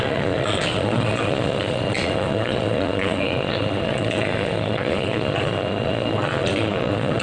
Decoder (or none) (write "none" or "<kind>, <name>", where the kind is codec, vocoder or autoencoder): vocoder, Vocos